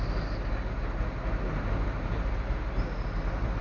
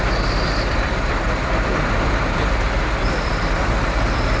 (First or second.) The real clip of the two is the first